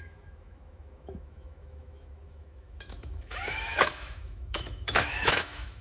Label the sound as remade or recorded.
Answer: remade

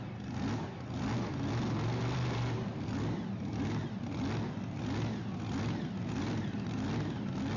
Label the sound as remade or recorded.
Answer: recorded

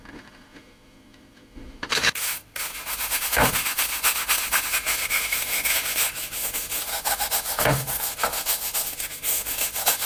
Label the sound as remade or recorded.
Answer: remade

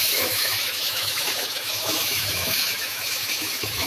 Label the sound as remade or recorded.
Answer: remade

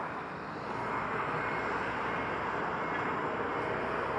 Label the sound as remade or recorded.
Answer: recorded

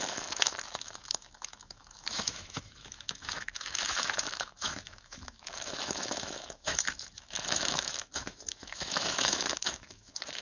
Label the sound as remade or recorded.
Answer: remade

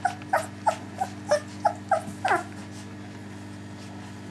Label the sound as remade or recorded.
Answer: recorded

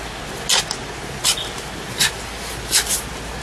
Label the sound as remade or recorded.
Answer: recorded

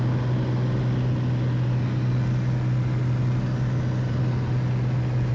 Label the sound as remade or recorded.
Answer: recorded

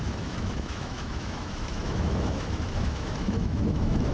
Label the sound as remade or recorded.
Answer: remade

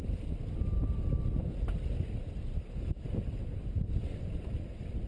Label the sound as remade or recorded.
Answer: recorded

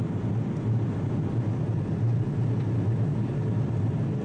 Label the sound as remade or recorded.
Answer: recorded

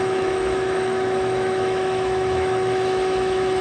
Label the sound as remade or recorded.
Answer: remade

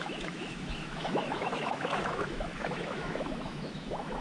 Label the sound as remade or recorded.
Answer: remade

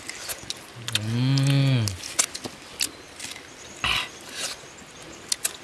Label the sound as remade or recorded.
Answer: recorded